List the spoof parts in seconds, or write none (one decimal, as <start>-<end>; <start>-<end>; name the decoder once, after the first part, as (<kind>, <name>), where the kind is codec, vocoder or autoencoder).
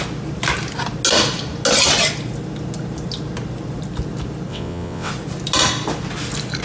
4.5-5.1 (vocoder, WaveNeXt)